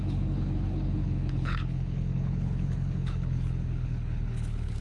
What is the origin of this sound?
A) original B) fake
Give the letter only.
B